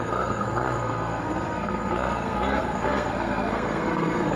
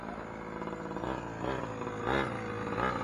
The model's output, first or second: first